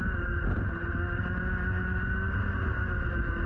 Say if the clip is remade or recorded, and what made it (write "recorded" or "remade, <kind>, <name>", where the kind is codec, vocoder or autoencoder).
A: recorded